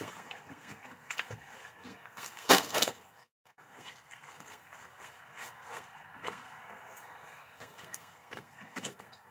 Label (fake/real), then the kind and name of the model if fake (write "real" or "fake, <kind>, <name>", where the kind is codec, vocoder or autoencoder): fake, codec, SNAC